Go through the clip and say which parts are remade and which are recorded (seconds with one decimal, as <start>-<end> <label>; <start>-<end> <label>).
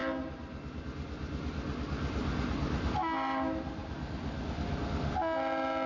0.0-5.9 recorded